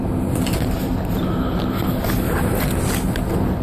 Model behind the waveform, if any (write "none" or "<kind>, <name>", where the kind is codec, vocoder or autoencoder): none